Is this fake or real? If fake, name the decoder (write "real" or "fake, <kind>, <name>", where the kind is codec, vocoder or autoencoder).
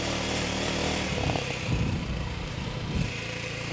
fake, vocoder, BigVGAN v2